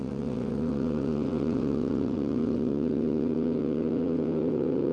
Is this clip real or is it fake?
fake